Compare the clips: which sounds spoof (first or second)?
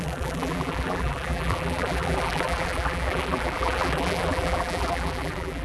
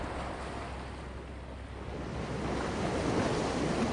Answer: first